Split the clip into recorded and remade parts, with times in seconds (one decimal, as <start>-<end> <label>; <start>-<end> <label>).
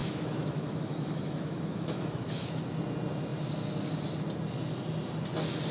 0.0-2.6 remade; 2.6-5.7 recorded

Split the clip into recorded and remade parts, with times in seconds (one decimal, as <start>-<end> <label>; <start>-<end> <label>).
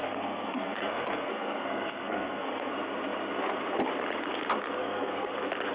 0.0-2.7 remade; 2.7-4.8 recorded; 4.8-5.3 remade; 5.3-5.7 recorded